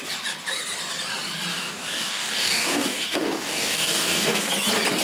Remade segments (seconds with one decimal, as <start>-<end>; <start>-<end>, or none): 1.5-4.5